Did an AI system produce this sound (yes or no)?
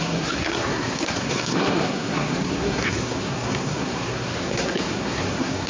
yes